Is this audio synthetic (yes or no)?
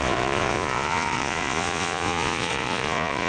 yes